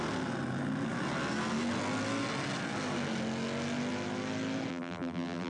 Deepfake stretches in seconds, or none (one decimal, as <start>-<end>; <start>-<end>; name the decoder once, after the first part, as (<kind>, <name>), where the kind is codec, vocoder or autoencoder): 4.7-5.5 (vocoder, BigVGAN v2)